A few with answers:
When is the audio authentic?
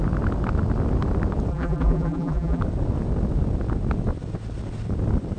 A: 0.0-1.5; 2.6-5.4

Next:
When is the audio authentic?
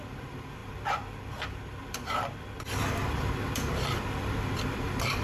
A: none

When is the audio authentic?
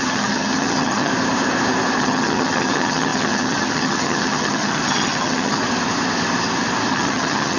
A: 1.1-2.0; 5.6-6.9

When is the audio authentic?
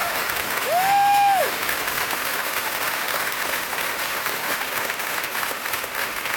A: none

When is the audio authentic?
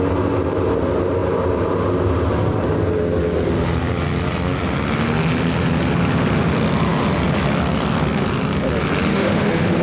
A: 0.0-9.1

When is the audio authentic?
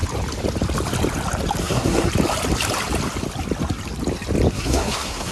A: 0.0-1.6; 2.1-4.5